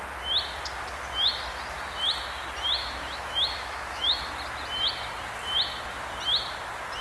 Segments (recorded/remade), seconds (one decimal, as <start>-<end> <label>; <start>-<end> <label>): 0.0-2.8 recorded; 2.8-4.3 remade; 4.3-7.0 recorded

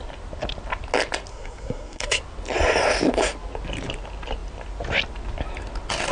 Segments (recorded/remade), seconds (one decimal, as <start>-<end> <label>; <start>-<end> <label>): 0.0-1.3 recorded; 1.3-2.2 remade; 2.2-6.1 recorded

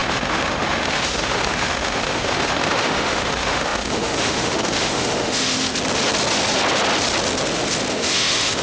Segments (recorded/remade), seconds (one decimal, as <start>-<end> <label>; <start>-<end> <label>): 0.0-5.7 remade; 5.7-7.9 recorded; 7.9-8.6 remade

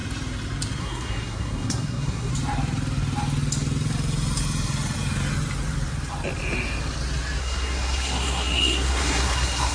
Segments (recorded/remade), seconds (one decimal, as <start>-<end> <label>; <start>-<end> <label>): 0.0-0.8 recorded; 0.8-2.3 remade; 2.3-7.4 recorded; 7.4-9.7 remade

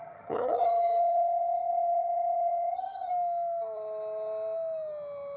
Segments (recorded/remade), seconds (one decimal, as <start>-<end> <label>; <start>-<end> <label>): 0.0-3.1 remade; 3.1-5.4 recorded

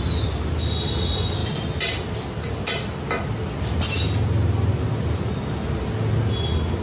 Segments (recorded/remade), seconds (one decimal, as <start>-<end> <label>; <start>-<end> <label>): 0.0-6.8 recorded

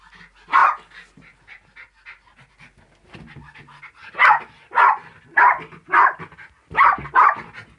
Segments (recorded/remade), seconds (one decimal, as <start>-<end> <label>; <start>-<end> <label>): 0.0-7.8 recorded